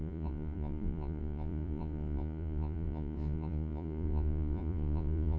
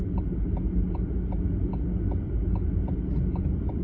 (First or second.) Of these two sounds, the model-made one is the first